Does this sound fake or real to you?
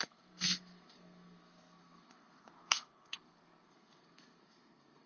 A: fake